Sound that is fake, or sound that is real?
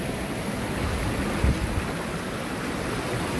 real